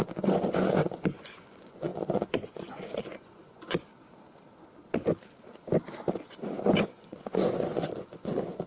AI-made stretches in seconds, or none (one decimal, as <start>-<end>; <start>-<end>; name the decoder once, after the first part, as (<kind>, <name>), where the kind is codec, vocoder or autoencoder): 0.0-3.9 (vocoder, Vocos); 6.8-8.7